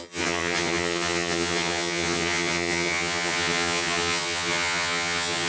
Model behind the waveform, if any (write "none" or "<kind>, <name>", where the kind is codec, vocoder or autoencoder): vocoder, HiFi-GAN